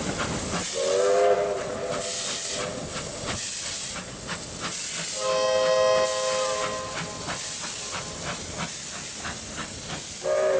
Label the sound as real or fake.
real